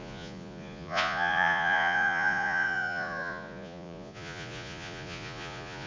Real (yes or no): no